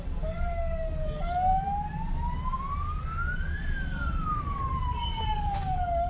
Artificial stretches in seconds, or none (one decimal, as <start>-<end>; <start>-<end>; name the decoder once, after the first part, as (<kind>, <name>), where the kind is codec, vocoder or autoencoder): 0.0-1.5 (codec, DAC); 4.4-6.1